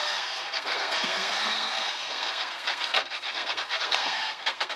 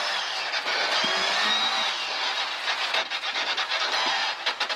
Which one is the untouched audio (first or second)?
second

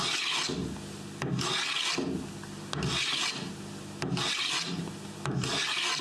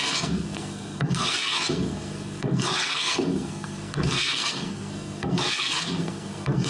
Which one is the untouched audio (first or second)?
first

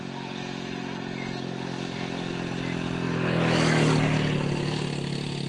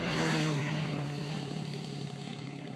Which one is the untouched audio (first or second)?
first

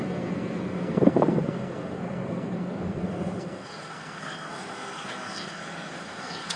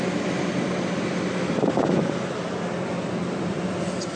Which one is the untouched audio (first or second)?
second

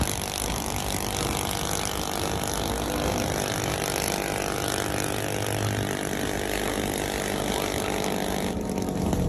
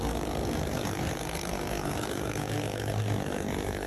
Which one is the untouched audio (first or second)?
first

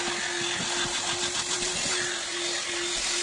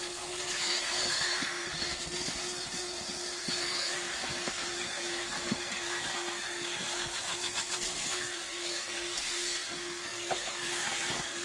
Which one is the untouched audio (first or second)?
first